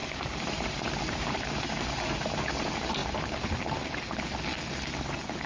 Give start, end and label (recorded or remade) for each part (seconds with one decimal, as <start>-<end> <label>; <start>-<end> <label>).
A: 0.0-4.5 remade; 4.5-5.1 recorded; 5.1-5.5 remade